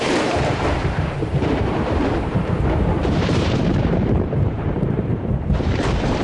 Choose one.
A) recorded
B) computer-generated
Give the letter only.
B